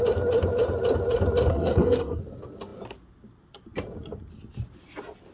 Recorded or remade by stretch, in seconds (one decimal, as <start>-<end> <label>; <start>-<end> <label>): 0.0-1.5 recorded; 1.5-2.2 remade; 2.2-5.3 recorded